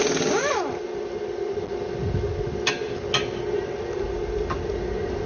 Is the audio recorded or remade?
recorded